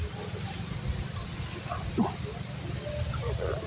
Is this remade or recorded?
recorded